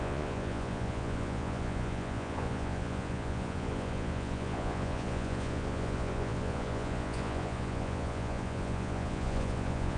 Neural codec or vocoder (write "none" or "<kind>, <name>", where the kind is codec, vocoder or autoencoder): vocoder, Vocos